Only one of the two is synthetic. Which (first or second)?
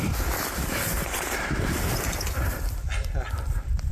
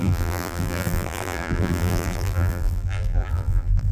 second